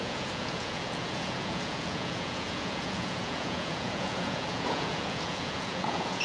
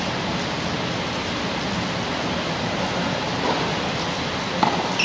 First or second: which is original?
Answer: second